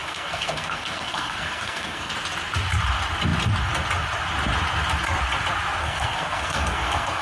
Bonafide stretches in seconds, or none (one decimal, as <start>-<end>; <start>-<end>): 2.1-5.8

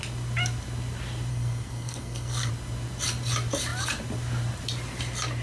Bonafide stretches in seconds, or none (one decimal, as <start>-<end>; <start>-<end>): 0.0-1.3; 2.5-5.4

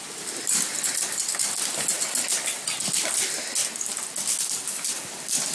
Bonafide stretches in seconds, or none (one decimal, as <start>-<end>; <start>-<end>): 0.0-5.5

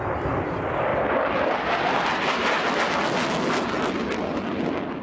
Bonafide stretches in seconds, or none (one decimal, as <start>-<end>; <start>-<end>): 0.0-5.0

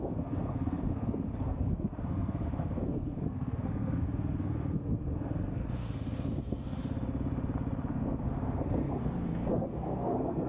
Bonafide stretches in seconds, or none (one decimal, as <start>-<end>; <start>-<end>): 6.8-7.9